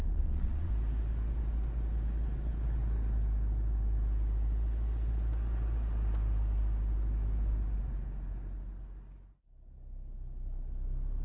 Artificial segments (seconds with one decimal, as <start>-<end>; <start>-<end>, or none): 0.0-0.7